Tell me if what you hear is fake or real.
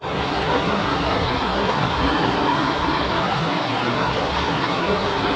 fake